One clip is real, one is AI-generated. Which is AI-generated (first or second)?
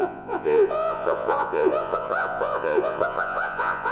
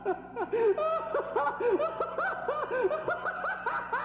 first